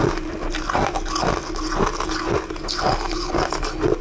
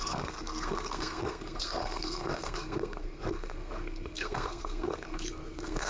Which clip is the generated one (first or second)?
second